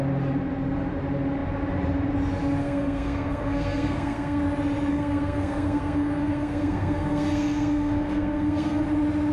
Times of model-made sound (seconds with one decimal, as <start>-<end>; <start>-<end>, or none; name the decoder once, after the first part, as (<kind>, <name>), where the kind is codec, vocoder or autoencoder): 2.6-4.4 (codec, SNAC); 4.9-8.8